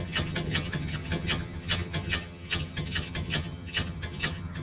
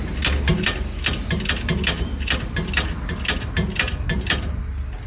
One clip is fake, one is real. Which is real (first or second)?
second